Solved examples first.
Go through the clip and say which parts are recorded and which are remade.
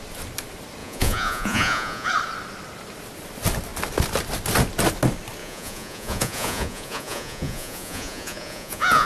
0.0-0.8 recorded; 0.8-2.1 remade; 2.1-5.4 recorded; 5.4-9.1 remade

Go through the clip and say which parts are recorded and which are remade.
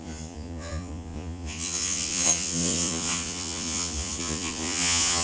0.0-5.2 remade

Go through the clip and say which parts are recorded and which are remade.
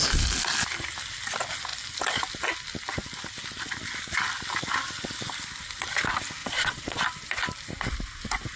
0.0-6.4 recorded; 6.4-7.0 remade; 7.0-8.6 recorded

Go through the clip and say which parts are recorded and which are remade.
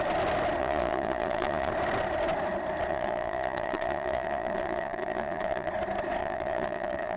0.0-0.6 recorded; 0.6-1.7 remade; 1.7-2.9 recorded; 2.9-5.7 remade; 5.7-6.2 recorded; 6.2-7.2 remade